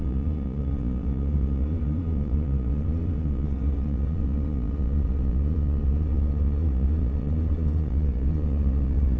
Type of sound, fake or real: fake